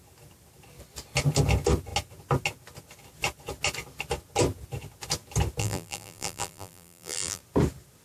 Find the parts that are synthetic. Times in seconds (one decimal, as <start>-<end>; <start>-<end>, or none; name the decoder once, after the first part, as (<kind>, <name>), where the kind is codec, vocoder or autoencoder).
5.6-7.4 (vocoder, BigVGAN v2)